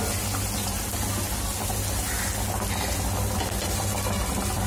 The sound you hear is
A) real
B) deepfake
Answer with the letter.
A